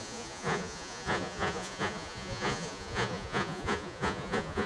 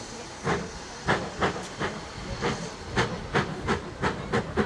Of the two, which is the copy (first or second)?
first